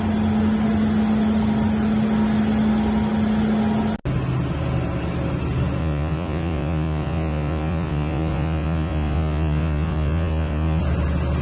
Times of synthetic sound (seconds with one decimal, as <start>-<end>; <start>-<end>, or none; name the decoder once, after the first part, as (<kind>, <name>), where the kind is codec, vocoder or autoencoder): 5.8-10.8 (vocoder, Vocos)